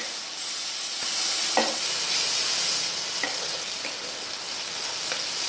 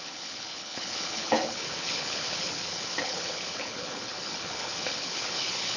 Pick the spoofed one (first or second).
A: second